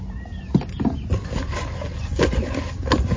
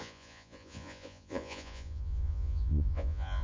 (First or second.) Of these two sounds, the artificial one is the second